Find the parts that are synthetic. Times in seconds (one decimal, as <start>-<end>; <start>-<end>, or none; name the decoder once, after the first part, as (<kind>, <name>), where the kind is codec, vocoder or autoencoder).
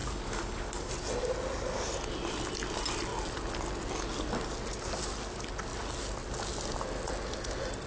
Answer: 0.0-0.9 (codec, DAC)